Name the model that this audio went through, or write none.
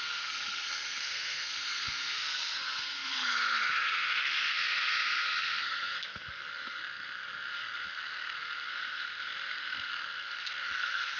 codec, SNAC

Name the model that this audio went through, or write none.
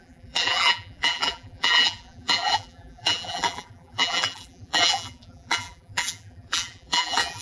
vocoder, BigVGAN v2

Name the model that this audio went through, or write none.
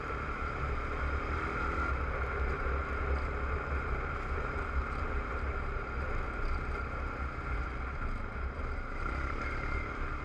none